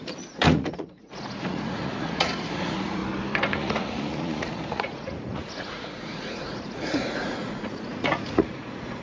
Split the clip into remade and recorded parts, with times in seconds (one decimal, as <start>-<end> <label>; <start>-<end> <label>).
0.0-3.0 remade; 3.0-3.5 recorded; 3.5-9.0 remade